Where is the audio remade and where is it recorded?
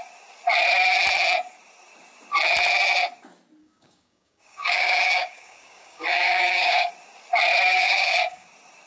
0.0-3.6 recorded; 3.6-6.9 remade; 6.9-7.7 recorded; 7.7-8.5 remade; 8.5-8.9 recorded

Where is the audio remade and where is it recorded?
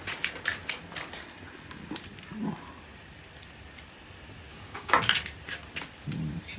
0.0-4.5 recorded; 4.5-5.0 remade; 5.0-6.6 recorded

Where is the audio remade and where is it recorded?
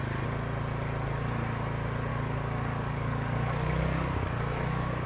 0.0-2.1 recorded; 2.1-5.1 remade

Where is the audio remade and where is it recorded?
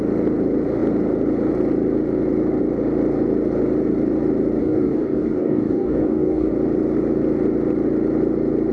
0.0-4.6 recorded; 4.6-6.5 remade; 6.5-8.7 recorded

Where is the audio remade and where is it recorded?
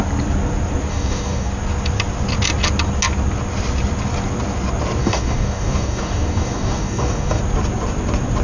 0.0-0.9 recorded; 0.9-1.5 remade; 1.5-5.0 recorded; 5.0-7.4 remade; 7.4-8.4 recorded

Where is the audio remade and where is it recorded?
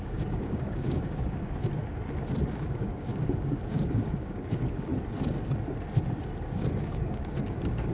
0.0-1.7 remade; 1.7-2.5 recorded; 2.5-4.9 remade; 4.9-6.4 recorded; 6.4-7.9 remade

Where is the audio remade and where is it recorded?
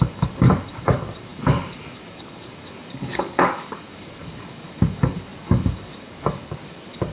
0.0-7.1 remade